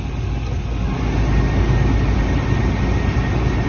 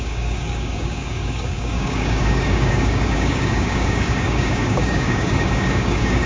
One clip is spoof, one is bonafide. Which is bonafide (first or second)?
first